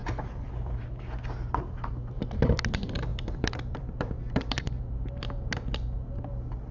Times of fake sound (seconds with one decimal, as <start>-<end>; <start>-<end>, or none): 0.0-0.8; 3.1-4.9